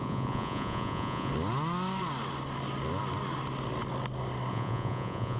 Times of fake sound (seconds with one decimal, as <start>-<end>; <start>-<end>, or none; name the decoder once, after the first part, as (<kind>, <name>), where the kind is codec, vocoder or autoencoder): 0.0-1.3 (vocoder, Vocos); 4.5-5.4